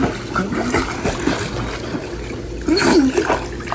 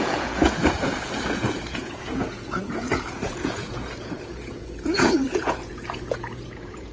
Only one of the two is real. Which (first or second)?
first